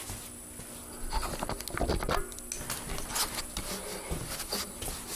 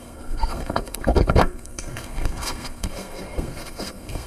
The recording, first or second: first